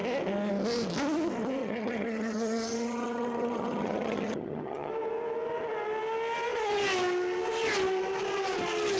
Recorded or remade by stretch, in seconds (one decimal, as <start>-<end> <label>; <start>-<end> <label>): 0.0-1.6 recorded; 1.6-4.9 remade; 4.9-9.0 recorded